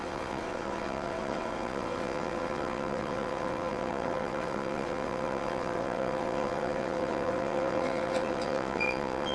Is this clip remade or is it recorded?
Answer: remade